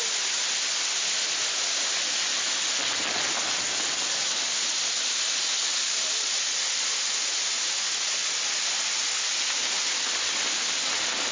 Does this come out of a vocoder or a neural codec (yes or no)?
no